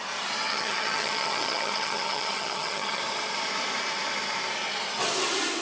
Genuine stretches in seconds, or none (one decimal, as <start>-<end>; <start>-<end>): 0.0-0.5; 3.0-5.6